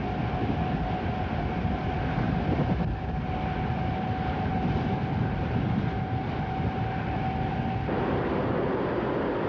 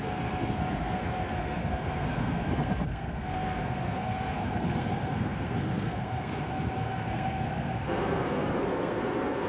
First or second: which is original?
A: first